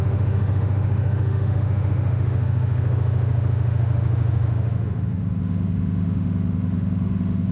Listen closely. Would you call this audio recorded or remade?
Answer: remade